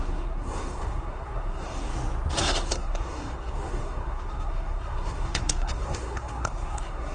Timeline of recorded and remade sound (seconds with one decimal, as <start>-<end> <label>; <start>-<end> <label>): 0.0-1.9 remade; 1.9-2.4 recorded; 2.4-7.1 remade